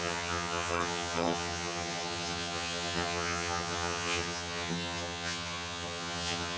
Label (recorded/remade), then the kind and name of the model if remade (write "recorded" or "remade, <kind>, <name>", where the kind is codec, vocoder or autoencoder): remade, vocoder, HiFi-GAN